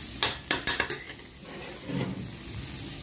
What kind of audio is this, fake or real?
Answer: real